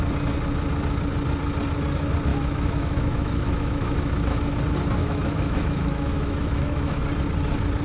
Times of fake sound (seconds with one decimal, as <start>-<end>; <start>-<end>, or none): 2.3-4.5; 5.0-7.0